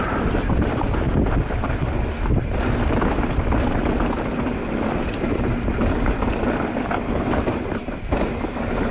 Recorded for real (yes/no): yes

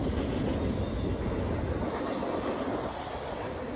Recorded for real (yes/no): yes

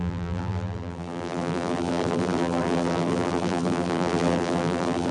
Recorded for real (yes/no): no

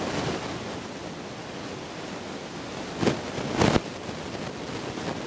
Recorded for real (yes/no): yes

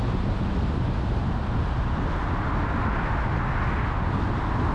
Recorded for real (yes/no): yes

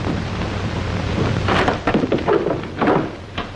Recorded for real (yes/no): no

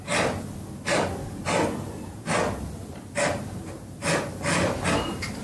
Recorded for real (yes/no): yes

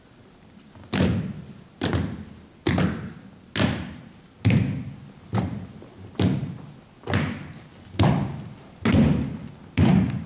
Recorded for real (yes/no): yes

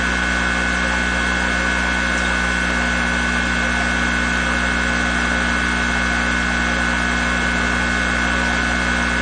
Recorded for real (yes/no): yes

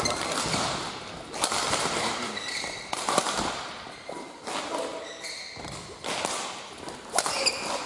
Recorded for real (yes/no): yes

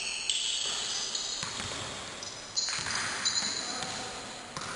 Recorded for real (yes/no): yes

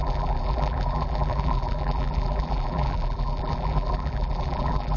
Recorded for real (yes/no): no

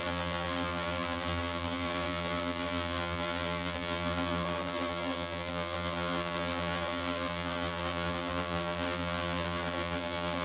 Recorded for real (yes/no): no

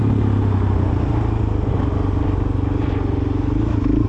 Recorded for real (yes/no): yes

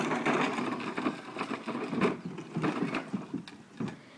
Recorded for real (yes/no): yes